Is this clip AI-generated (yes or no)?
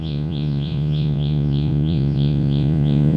yes